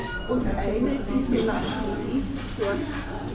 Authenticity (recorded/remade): recorded